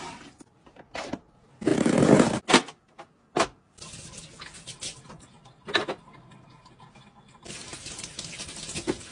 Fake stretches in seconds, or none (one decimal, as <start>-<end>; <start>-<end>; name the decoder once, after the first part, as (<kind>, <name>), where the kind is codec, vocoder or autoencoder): 1.7-2.4 (vocoder, BigVGAN v2); 7.7-8.3